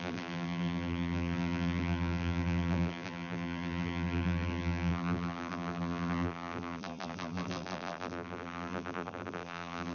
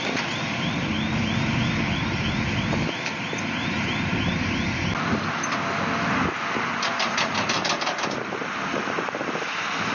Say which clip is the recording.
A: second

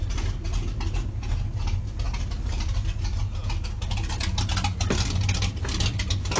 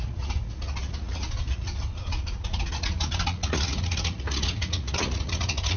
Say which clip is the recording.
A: first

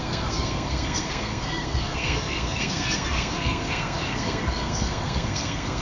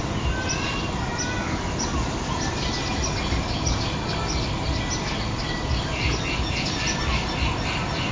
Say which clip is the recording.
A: second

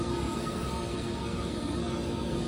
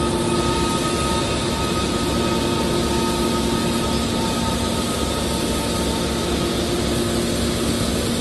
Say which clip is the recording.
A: second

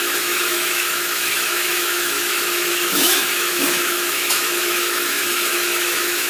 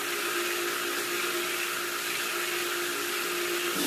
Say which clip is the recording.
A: second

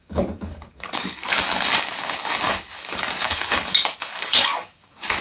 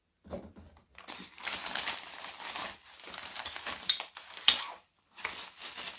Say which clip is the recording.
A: second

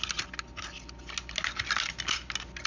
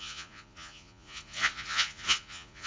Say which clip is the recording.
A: first